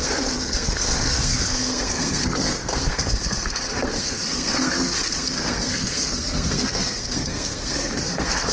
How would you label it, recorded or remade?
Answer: remade